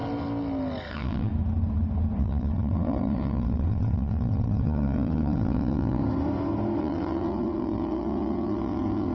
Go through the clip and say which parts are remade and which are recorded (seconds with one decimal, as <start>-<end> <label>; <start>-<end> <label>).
0.0-0.9 recorded; 0.9-1.3 remade; 1.3-2.2 recorded; 2.2-6.0 remade; 6.0-6.8 recorded; 6.8-9.1 remade